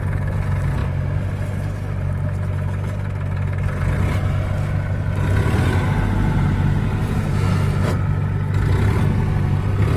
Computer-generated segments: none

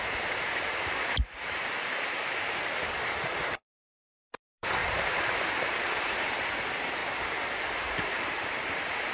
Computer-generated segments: 0.0-7.0 (vocoder, BigVGAN v2); 7.9-9.1

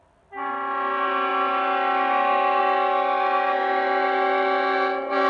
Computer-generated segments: none

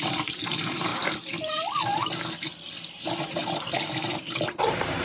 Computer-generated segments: 0.0-0.9 (vocoder, BigVGAN v2); 2.9-5.0

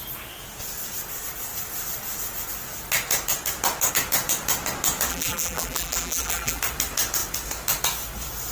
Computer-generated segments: 5.1-6.6 (vocoder, BigVGAN v2)

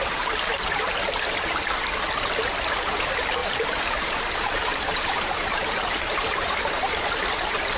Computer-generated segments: 3.4-7.1 (vocoder, BigVGAN v2)